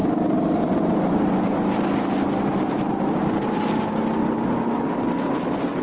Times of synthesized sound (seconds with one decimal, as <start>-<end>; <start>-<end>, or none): none